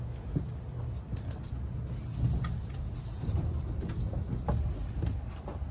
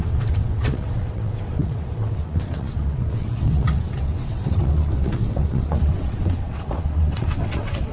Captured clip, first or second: first